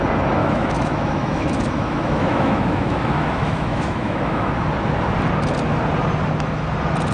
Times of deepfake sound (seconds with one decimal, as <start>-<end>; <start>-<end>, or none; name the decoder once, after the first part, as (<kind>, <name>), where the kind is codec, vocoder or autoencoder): 0.4-4.5 (autoencoder, DAC-VAE)